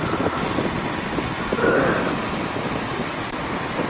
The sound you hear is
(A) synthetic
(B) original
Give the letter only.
B